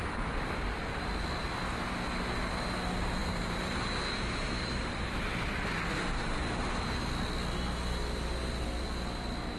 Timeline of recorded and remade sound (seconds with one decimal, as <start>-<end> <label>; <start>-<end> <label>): 0.0-3.2 recorded; 3.2-7.1 remade; 7.1-9.6 recorded